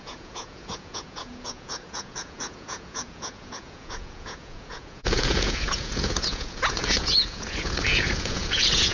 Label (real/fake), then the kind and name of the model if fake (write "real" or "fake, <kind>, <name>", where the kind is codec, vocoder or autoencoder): fake, vocoder, Vocos